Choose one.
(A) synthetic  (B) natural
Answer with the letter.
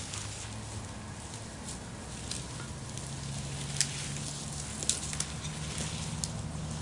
B